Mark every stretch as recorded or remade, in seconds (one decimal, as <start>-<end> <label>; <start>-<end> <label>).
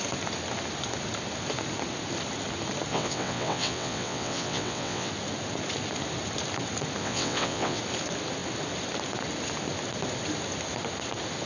0.0-2.9 recorded; 2.9-5.1 remade; 5.1-7.0 recorded; 7.0-7.8 remade; 7.8-11.5 recorded